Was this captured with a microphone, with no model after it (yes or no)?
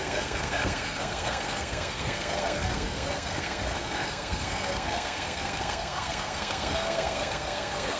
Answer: no